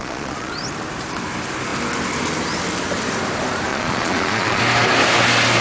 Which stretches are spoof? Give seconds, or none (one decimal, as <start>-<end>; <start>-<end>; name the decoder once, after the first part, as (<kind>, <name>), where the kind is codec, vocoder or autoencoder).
0.0-0.5 (vocoder, Vocos); 3.7-4.6